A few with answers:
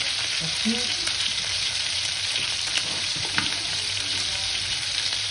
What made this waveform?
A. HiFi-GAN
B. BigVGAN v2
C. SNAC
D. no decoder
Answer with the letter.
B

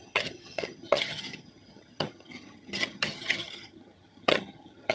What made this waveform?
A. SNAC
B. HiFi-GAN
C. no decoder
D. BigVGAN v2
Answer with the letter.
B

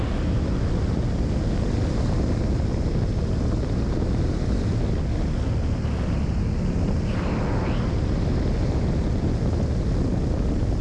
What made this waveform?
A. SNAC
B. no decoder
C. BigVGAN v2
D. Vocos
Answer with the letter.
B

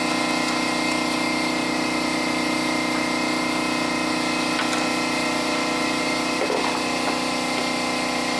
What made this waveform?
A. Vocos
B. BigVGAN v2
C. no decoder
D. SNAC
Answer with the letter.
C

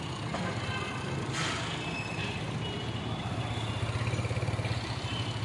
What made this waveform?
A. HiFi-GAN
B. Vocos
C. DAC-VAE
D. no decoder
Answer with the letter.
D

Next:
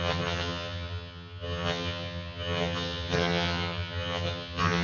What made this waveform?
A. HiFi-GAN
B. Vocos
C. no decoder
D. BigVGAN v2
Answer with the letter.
A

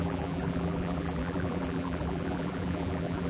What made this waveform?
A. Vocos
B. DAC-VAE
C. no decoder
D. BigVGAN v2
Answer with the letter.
D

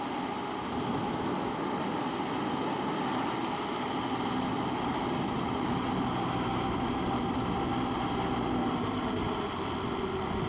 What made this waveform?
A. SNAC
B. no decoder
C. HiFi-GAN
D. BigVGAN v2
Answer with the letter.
B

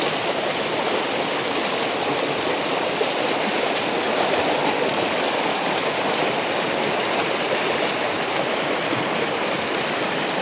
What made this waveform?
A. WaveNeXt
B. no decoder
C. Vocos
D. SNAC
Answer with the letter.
B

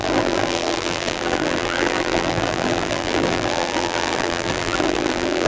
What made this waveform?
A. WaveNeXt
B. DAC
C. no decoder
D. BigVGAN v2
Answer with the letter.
D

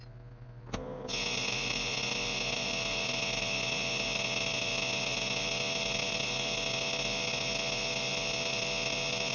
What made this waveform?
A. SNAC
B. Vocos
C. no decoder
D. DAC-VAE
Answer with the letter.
C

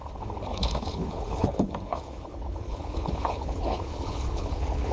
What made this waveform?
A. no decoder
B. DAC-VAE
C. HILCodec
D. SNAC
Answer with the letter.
C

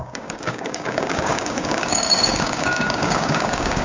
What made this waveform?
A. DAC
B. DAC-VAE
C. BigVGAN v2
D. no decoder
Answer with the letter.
A